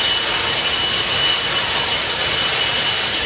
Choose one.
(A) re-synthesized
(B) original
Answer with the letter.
B